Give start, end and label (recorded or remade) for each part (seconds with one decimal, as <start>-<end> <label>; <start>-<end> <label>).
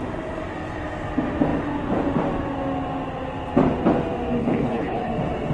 0.0-4.4 recorded; 4.4-5.1 remade; 5.1-5.5 recorded